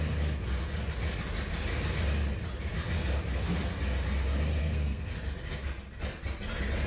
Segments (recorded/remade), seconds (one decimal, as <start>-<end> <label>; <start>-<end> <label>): 0.0-4.6 recorded; 4.6-5.1 remade; 5.1-6.9 recorded